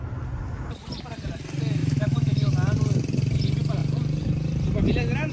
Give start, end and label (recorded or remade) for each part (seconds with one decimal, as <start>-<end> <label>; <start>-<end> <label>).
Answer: 0.0-1.8 recorded; 1.8-2.5 remade; 2.5-5.3 recorded